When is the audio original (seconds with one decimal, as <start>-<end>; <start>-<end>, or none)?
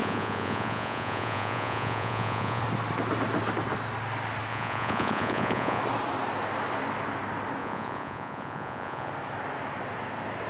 2.6-4.5; 5.8-7.6; 9.1-10.5